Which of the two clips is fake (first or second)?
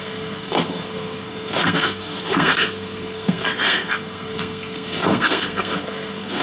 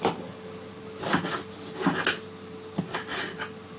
first